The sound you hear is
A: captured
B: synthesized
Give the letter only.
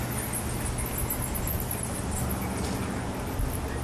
A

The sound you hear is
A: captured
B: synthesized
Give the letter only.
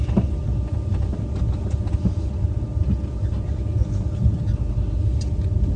A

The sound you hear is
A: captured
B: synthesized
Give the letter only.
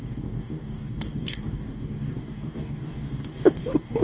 B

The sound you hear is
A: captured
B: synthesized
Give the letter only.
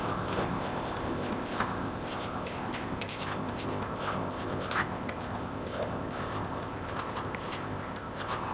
B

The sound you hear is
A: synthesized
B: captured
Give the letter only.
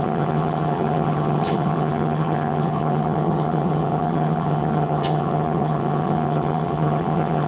A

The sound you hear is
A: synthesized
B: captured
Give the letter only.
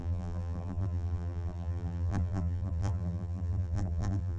A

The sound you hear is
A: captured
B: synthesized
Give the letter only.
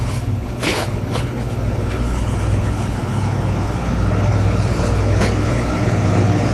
B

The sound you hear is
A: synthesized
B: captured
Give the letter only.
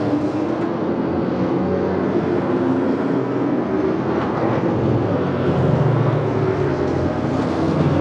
A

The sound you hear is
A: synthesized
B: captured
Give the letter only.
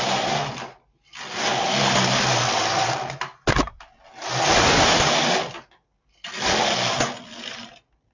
B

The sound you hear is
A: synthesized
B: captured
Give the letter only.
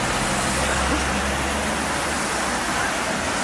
B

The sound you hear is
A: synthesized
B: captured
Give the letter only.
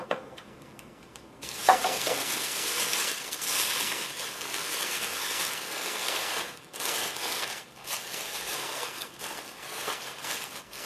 A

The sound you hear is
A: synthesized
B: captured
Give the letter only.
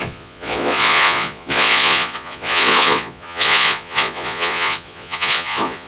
A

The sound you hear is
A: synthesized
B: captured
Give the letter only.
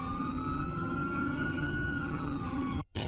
A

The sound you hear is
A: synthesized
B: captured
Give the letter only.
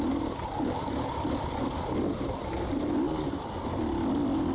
B